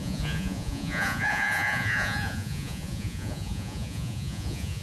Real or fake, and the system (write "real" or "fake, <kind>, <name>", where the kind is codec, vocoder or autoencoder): fake, vocoder, Vocos